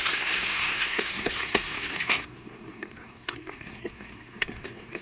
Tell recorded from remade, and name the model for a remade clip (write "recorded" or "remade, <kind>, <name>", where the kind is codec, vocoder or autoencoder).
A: remade, codec, SNAC